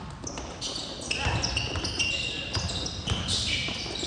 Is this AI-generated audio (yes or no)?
no